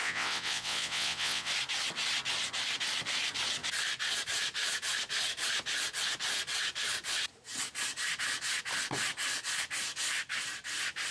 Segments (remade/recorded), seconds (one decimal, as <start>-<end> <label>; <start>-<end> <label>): 0.0-1.5 remade; 1.5-11.1 recorded